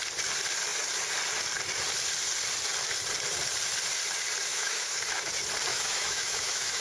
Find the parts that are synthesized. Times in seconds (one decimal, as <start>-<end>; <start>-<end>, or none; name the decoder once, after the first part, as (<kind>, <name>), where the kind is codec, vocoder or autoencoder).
4.5-5.3 (autoencoder, DAC-VAE); 5.7-6.8